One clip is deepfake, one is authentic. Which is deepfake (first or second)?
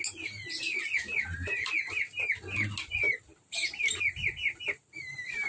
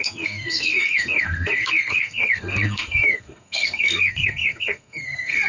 second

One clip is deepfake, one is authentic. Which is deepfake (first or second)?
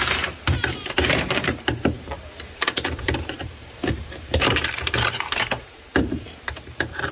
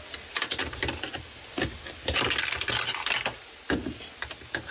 first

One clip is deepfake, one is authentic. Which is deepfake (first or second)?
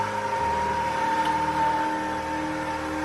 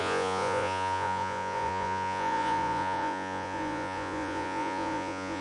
second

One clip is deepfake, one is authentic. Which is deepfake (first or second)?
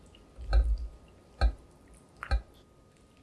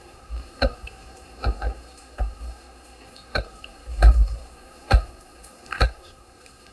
second